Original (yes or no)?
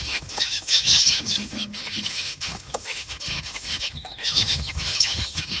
no